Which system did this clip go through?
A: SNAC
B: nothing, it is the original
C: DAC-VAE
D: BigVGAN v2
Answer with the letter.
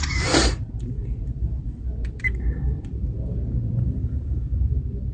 D